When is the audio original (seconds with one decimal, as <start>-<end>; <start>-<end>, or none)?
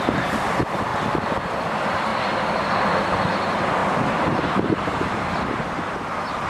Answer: 0.0-6.5